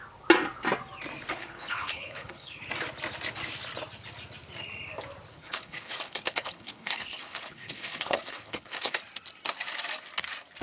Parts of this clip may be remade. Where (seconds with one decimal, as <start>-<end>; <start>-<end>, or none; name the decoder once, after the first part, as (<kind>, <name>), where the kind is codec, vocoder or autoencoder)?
1.3-2.7 (codec, HILCodec); 5.3-9.0

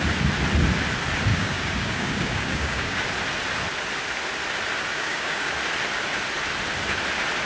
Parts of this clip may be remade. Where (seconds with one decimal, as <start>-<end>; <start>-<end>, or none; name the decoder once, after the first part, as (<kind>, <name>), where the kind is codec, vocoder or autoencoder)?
1.3-3.0 (codec, DAC); 4.9-5.5

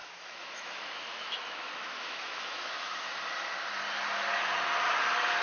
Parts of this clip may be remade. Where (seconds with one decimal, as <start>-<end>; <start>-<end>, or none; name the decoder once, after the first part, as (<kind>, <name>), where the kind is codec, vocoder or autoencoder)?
0.0-3.2 (autoencoder, DAC-VAE)